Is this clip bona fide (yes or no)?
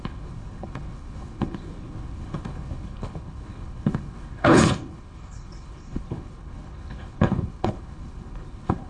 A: no